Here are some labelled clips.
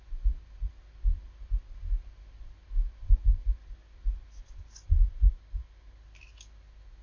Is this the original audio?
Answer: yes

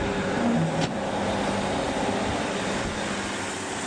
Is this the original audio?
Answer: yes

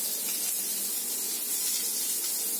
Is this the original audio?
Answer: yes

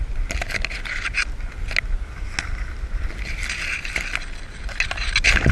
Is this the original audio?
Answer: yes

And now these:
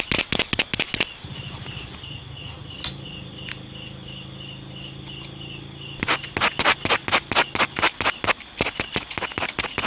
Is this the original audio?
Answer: yes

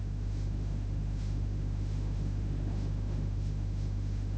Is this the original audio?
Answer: no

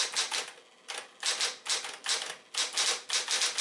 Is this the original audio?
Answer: yes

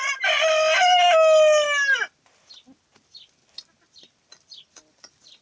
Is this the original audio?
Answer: yes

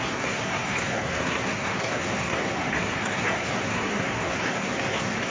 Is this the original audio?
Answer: no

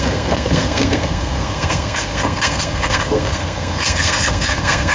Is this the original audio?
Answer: no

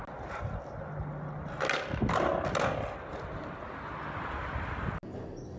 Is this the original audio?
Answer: yes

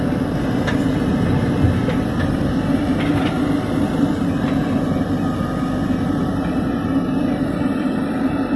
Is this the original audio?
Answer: yes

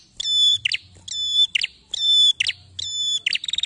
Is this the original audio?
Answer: yes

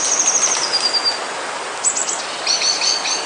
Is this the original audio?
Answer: yes